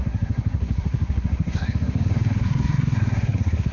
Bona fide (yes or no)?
no